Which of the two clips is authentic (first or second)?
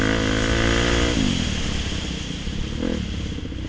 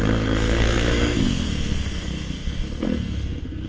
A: first